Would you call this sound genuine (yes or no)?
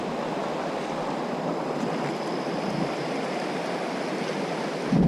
yes